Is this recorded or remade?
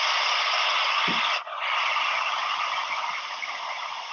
recorded